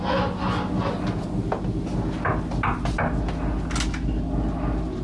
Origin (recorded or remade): recorded